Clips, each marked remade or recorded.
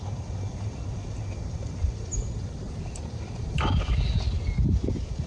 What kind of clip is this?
recorded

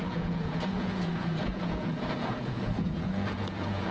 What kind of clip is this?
remade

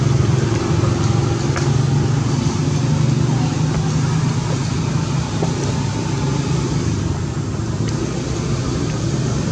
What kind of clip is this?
recorded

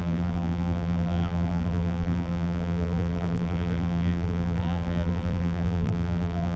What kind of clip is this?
remade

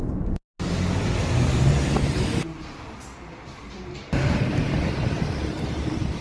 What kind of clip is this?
recorded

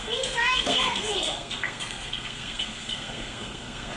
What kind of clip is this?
remade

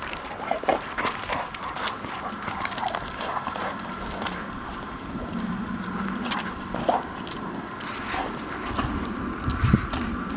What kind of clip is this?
recorded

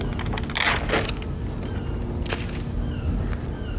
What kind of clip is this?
recorded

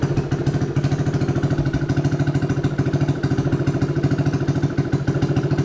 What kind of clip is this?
recorded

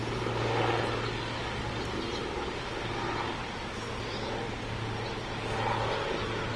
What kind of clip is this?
recorded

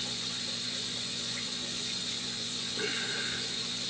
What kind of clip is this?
remade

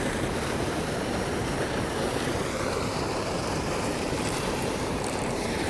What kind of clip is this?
remade